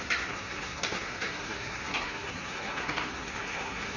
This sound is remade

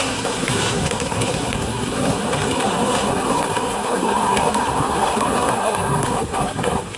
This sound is remade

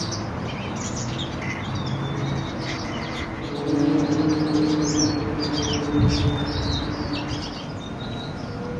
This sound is recorded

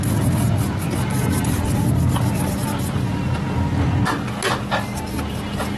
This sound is recorded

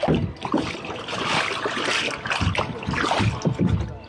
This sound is recorded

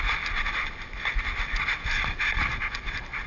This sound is recorded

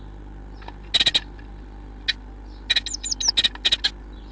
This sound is recorded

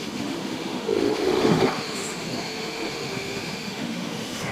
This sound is remade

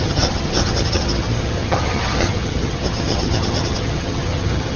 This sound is remade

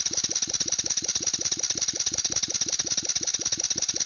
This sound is recorded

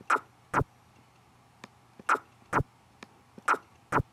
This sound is recorded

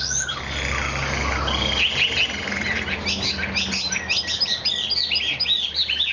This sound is recorded